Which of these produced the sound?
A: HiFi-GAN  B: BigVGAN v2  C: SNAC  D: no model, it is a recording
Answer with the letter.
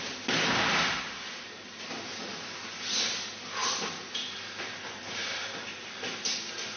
D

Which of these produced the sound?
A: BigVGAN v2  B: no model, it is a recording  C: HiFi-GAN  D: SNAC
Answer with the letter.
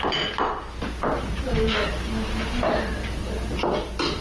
B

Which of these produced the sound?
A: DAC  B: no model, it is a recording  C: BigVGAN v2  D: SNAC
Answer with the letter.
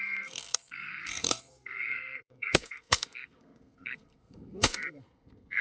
D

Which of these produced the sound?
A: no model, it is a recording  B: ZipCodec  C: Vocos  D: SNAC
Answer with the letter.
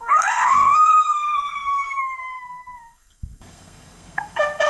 D